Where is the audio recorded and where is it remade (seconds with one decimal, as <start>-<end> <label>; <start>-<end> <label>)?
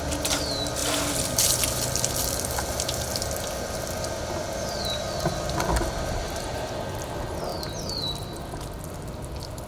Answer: 0.0-9.7 recorded